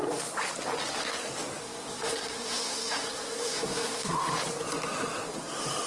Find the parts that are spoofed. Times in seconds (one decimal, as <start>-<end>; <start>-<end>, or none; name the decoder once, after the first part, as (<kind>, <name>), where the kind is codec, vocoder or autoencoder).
1.6-4.2 (codec, SNAC)

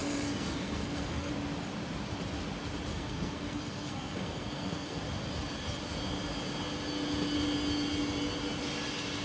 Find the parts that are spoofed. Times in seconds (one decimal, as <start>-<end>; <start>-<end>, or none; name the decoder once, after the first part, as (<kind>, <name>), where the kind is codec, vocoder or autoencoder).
0.0-1.3 (codec, SNAC); 2.9-5.0

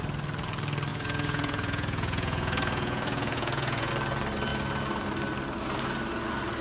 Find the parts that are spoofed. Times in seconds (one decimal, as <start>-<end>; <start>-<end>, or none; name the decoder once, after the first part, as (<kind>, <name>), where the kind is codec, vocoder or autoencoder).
0.9-3.9 (vocoder, Vocos)

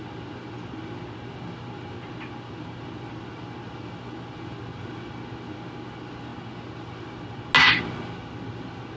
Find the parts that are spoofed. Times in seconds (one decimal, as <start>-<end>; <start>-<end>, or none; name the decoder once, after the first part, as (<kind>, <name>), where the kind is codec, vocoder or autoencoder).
none

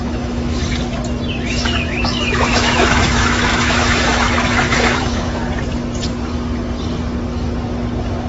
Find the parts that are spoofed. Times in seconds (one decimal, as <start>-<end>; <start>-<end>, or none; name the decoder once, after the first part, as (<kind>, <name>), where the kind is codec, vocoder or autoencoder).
0.0-0.6 (autoencoder, DAC-VAE); 1.5-5.4

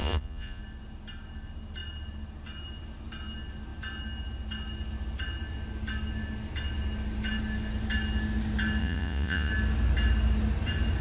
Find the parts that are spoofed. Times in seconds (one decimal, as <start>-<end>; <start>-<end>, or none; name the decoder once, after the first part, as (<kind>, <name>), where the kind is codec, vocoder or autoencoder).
0.0-0.6 (vocoder, Vocos); 8.8-9.5

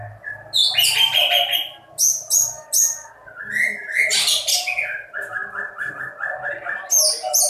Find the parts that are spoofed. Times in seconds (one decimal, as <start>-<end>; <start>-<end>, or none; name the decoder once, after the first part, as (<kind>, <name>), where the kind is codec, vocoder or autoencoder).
none

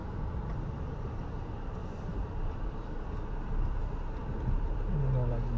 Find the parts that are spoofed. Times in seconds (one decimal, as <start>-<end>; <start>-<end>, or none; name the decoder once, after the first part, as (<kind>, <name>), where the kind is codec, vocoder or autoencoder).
0.0-1.3 (vocoder, BigVGAN v2); 1.8-3.8; 4.2-5.0